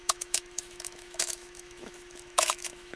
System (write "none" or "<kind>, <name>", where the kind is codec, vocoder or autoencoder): autoencoder, DAC-VAE